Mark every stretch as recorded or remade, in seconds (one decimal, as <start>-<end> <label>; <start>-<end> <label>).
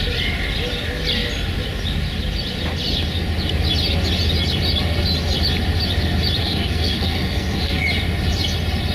0.0-6.4 recorded; 6.4-7.8 remade; 7.8-8.9 recorded